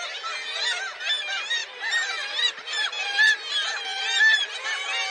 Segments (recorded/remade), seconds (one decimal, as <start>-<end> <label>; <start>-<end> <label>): 0.0-1.6 recorded; 1.6-3.3 remade; 3.3-3.9 recorded; 3.9-4.4 remade; 4.4-5.1 recorded